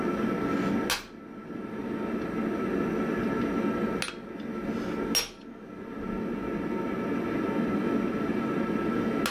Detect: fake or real real